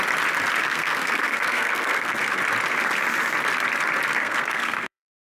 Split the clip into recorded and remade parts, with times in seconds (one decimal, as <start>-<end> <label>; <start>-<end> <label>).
0.0-0.6 recorded; 0.6-2.4 remade; 2.4-4.2 recorded; 4.2-5.4 remade

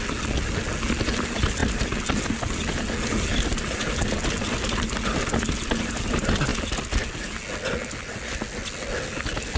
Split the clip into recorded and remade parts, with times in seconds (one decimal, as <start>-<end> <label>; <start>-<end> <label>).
0.0-9.6 recorded

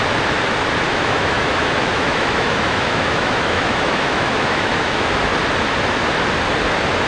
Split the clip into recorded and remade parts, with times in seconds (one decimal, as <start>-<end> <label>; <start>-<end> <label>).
0.0-0.9 recorded; 0.9-5.2 remade; 5.2-7.1 recorded

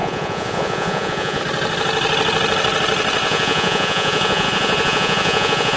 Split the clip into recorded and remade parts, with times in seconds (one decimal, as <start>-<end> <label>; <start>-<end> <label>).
0.0-1.4 remade; 1.4-3.2 recorded; 3.2-5.8 remade

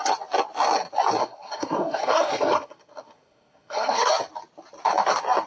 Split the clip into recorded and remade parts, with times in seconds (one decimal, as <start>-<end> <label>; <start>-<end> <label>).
0.0-1.2 recorded; 1.2-4.1 remade; 4.1-5.5 recorded